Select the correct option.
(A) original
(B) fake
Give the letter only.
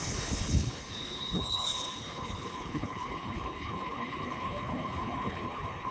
B